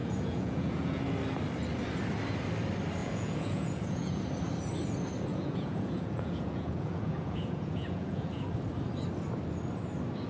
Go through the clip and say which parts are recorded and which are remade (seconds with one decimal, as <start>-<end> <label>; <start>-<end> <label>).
0.0-1.0 remade; 1.0-3.0 recorded; 3.0-4.2 remade; 4.2-5.3 recorded; 5.3-8.5 remade; 8.5-10.3 recorded